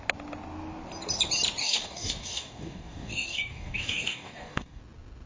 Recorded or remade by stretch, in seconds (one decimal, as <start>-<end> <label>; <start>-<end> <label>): 0.0-1.6 recorded; 1.6-4.8 remade; 4.8-5.3 recorded